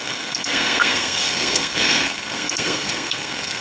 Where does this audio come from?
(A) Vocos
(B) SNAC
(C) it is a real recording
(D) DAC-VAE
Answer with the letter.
B